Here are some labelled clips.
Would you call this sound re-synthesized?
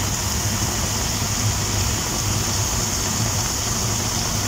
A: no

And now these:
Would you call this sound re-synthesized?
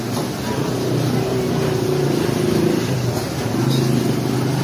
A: no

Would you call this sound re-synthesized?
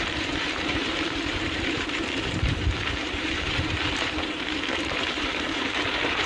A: yes